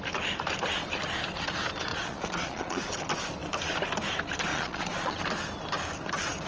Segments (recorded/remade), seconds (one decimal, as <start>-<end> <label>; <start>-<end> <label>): 0.0-1.9 recorded; 1.9-2.8 remade; 2.8-4.5 recorded; 4.5-5.2 remade; 5.2-6.5 recorded

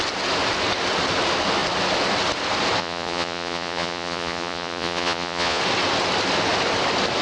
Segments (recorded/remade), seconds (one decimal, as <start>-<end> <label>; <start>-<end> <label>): 0.0-2.8 recorded; 2.8-5.6 remade; 5.6-7.2 recorded